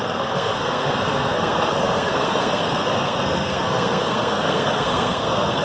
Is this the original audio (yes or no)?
no